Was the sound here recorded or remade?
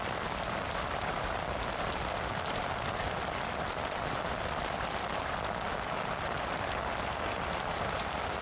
recorded